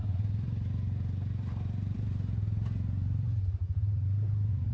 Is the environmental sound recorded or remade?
remade